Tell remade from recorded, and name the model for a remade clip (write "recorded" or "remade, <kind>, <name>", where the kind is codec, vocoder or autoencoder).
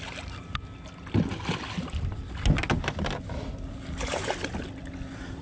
recorded